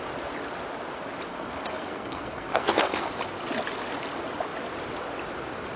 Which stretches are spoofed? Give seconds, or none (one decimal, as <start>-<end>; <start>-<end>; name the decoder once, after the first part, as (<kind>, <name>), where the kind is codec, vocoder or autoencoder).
1.3-3.1 (codec, SNAC)